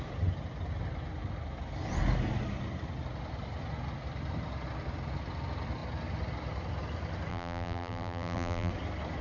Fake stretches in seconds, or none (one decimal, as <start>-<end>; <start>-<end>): 7.3-8.7